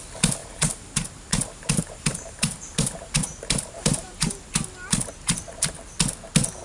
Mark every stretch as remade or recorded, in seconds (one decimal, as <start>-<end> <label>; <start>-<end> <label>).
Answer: 0.0-0.4 recorded; 0.4-4.4 remade; 4.4-6.6 recorded